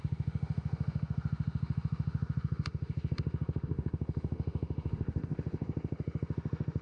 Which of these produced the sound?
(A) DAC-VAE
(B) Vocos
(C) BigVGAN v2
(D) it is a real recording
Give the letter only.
A